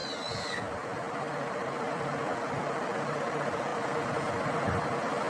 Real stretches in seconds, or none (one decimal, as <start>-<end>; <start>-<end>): 0.0-5.3